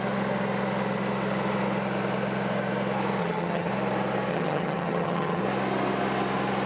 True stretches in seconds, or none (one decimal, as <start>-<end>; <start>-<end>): 0.0-3.2; 3.7-4.3; 5.4-6.7